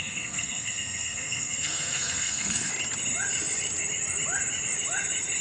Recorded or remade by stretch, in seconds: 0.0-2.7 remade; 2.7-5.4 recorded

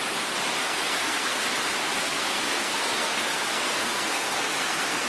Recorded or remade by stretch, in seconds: 0.0-0.6 recorded; 0.6-1.4 remade; 1.4-1.9 recorded; 1.9-5.1 remade